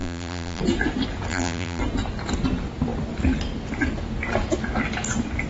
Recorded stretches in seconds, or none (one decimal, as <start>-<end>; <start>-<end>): 0.6-1.3; 1.8-5.5